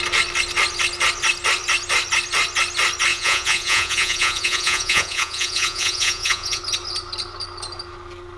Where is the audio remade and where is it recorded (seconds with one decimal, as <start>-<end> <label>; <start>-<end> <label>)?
0.0-3.1 recorded; 3.1-6.6 remade; 6.6-8.4 recorded